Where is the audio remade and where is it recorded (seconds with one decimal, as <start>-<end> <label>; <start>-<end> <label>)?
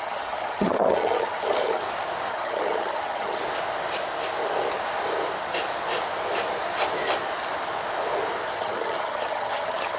0.0-1.8 remade; 1.8-2.3 recorded; 2.3-3.4 remade; 3.4-8.6 recorded; 8.6-10.0 remade